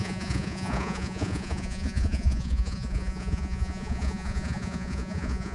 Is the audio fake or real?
fake